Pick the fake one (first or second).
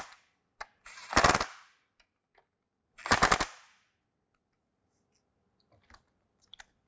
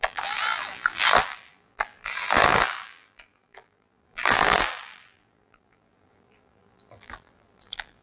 second